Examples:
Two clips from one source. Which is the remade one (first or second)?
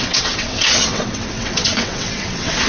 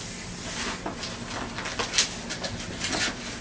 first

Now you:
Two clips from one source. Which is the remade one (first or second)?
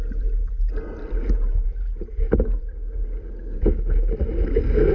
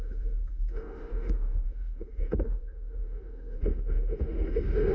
second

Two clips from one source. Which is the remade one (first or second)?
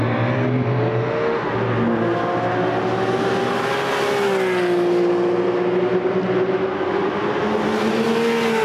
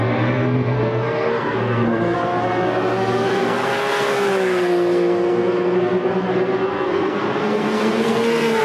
second